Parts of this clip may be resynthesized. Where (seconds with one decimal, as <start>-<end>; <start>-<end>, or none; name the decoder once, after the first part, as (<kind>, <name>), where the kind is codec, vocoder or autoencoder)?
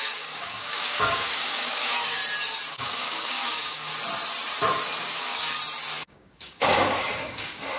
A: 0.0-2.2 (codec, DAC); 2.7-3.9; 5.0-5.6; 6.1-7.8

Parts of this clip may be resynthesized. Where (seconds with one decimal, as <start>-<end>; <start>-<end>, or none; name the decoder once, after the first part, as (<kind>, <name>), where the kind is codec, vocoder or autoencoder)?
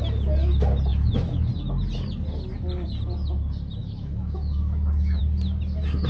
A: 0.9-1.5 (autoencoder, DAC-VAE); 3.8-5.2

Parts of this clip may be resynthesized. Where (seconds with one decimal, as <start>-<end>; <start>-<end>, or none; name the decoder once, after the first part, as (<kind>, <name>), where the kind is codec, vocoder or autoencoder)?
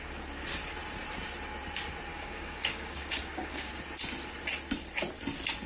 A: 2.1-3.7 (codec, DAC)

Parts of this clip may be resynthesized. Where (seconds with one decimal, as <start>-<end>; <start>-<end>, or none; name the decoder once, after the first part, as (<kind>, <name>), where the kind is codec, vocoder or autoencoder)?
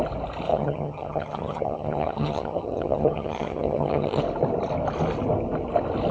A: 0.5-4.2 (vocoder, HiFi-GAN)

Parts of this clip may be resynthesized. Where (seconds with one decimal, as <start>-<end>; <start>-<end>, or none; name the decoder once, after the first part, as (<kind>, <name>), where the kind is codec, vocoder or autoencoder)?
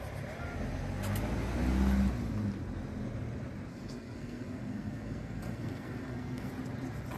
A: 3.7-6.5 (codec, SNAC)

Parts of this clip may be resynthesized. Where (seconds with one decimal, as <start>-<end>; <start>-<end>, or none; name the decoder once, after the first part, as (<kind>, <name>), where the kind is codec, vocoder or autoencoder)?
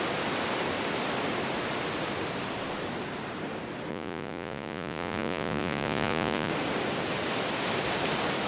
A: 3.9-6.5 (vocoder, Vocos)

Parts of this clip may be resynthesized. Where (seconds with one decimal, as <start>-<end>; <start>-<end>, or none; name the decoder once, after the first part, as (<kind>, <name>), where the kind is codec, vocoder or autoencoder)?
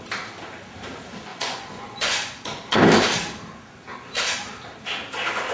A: 1.3-2.8 (vocoder, Vocos)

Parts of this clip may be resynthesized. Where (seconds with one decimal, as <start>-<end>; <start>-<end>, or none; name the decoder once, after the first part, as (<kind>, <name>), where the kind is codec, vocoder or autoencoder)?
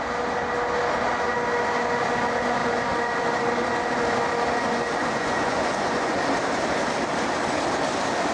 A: 5.0-6.2 (vocoder, Vocos)